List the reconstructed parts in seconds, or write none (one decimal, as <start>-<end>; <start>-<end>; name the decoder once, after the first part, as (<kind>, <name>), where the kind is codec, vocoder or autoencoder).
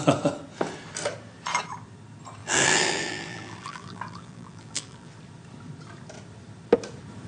2.4-5.1 (vocoder, BigVGAN v2)